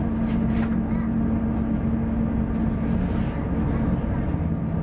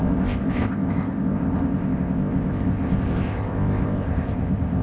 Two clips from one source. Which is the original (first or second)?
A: first